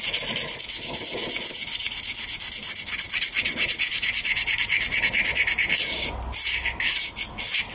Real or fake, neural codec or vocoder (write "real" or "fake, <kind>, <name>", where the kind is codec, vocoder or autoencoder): real